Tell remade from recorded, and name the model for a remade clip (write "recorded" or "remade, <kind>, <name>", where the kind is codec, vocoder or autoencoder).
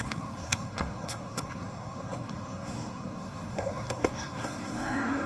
remade, codec, SNAC